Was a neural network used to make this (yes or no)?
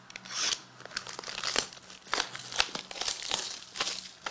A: no